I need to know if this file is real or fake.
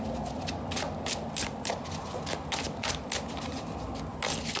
real